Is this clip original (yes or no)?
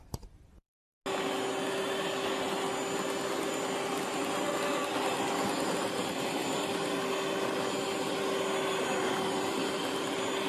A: yes